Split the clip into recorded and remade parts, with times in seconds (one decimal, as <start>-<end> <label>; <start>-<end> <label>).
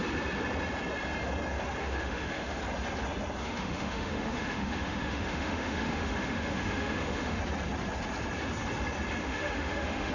0.0-1.8 recorded; 1.8-2.6 remade; 2.6-3.4 recorded; 3.4-7.4 remade; 7.4-9.2 recorded; 9.2-10.1 remade